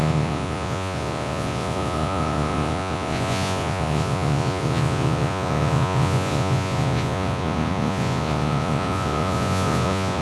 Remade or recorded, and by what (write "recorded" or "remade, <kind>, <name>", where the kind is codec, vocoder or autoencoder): remade, vocoder, Vocos